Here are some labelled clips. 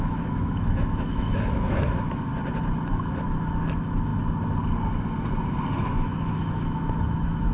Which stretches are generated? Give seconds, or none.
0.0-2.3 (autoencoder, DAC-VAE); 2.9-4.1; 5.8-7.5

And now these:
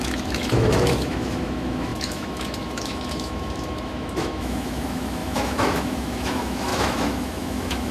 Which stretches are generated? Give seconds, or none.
0.0-7.9 (autoencoder, DAC-VAE)

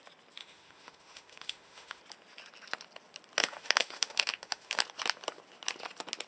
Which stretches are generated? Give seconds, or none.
0.4-2.0 (autoencoder, DAC-VAE); 3.4-4.8